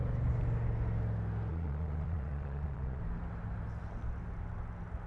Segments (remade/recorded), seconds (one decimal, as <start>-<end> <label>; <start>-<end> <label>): 0.0-1.5 recorded; 1.5-3.0 remade; 3.0-5.1 recorded